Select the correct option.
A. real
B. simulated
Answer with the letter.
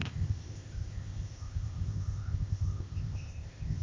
B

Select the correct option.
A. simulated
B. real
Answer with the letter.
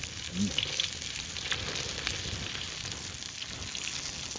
B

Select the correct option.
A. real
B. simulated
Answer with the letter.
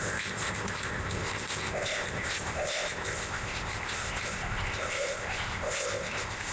B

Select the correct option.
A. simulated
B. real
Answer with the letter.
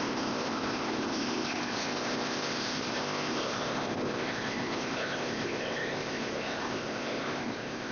A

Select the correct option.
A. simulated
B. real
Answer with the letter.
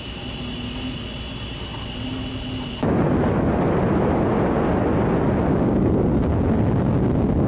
B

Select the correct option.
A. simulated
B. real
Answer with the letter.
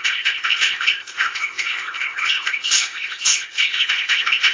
A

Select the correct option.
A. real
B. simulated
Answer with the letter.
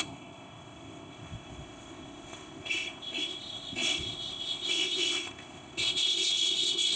B